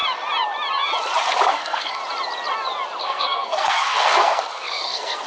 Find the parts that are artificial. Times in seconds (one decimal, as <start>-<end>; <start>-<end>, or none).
1.5-2.0; 3.0-5.3